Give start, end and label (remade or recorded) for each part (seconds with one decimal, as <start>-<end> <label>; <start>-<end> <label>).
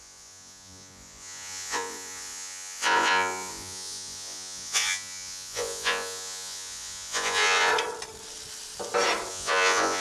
0.0-7.7 remade; 7.7-9.3 recorded; 9.3-10.0 remade